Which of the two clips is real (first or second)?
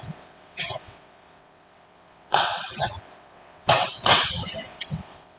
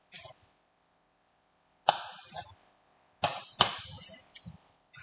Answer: second